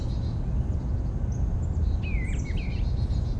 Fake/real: real